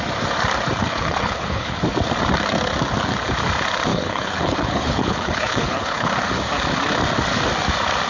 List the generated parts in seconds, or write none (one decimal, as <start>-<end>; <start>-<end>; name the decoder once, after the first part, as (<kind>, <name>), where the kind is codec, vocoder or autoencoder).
0.8-1.8 (codec, HILCodec); 3.9-6.1